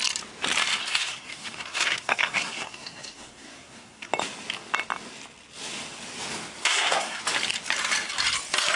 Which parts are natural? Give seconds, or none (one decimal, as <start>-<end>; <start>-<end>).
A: 0.0-0.8; 4.1-6.6; 7.2-8.8